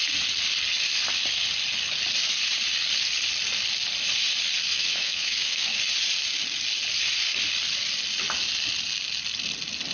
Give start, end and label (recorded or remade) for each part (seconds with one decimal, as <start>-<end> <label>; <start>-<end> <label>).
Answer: 0.0-4.7 recorded; 4.7-5.8 remade; 5.8-9.9 recorded

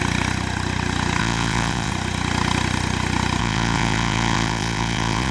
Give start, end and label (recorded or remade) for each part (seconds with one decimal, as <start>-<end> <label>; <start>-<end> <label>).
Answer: 0.0-1.2 recorded; 1.2-1.9 remade; 1.9-3.4 recorded; 3.4-5.3 remade

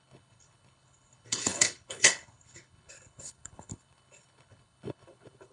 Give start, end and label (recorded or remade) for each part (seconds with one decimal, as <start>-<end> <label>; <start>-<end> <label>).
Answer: 0.0-5.5 remade

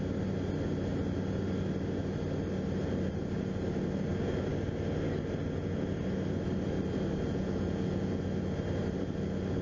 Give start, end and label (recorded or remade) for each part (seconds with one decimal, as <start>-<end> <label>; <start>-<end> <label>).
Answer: 0.0-7.3 recorded; 7.3-8.2 remade; 8.2-9.6 recorded

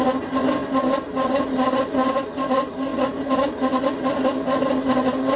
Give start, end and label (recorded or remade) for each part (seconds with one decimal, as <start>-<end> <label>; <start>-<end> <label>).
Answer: 0.0-0.6 recorded; 0.6-2.1 remade; 2.1-5.4 recorded

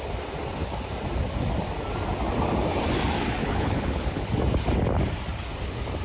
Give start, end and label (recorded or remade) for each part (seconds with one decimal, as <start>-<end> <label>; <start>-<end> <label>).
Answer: 0.0-3.4 recorded; 3.4-4.4 remade; 4.4-6.0 recorded

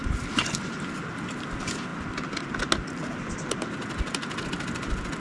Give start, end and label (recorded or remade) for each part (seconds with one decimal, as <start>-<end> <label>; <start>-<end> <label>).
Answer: 0.0-5.2 recorded